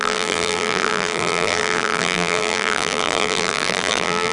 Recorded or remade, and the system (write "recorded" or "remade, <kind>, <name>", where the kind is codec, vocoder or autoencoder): remade, vocoder, BigVGAN v2